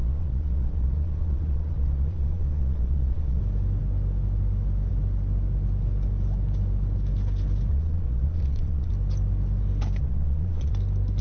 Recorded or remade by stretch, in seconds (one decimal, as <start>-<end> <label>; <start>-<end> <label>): 0.0-3.4 remade; 3.4-7.7 recorded; 7.7-8.9 remade; 8.9-10.0 recorded; 10.0-10.7 remade; 10.7-11.2 recorded